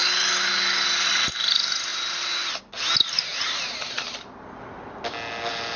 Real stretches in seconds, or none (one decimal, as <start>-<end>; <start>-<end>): 0.0-3.3; 4.0-5.8